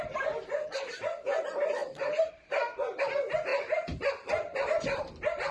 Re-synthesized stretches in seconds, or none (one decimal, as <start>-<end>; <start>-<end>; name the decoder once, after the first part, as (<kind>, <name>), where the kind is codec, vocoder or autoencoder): 1.8-3.0 (vocoder, BigVGAN v2)